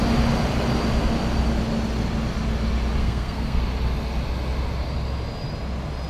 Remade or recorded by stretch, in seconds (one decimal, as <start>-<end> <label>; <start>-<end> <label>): 0.0-3.0 recorded; 3.0-3.6 remade; 3.6-6.1 recorded